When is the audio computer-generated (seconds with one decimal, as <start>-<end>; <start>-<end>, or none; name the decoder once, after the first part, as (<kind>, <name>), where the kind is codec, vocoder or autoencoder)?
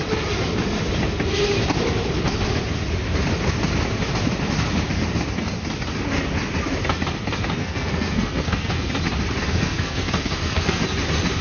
7.6-8.9 (codec, SNAC); 9.4-10.8